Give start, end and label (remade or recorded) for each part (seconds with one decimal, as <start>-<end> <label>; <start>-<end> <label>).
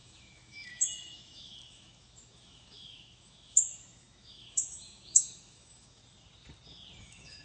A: 0.0-6.0 remade; 6.0-7.0 recorded; 7.0-7.4 remade